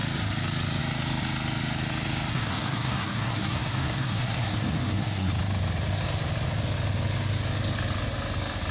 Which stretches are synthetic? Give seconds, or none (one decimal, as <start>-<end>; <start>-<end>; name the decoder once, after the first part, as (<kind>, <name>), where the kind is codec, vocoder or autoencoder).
2.3-5.3 (codec, SNAC)